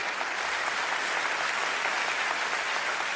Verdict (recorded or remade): recorded